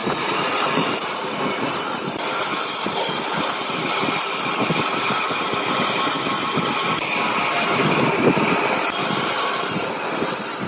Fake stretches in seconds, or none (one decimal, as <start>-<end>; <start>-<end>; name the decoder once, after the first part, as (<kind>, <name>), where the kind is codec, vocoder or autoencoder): 0.0-1.6 (vocoder, Vocos)